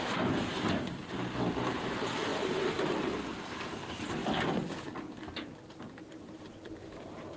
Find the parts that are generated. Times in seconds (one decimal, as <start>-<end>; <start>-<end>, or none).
0.0-4.2; 6.2-7.4